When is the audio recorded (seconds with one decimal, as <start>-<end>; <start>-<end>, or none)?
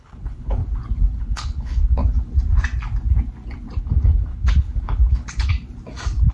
0.6-1.2; 2.0-3.8; 5.5-6.3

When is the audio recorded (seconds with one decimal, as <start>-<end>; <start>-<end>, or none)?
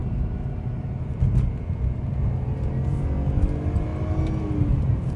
0.0-5.2